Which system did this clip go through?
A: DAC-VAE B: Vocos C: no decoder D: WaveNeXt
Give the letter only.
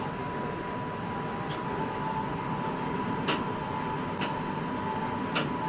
C